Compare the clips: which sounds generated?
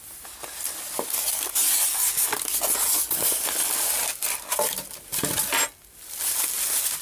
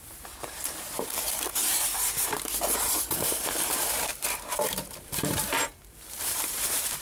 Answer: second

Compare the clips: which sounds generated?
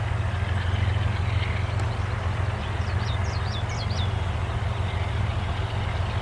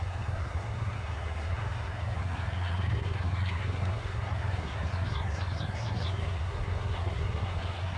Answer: second